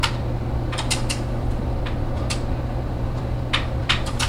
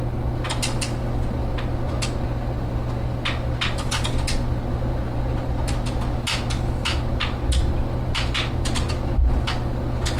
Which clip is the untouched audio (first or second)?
second